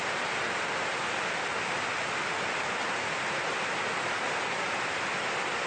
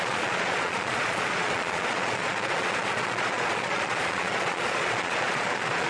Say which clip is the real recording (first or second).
first